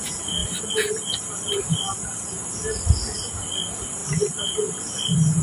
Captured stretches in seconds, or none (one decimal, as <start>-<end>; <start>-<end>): 0.0-5.4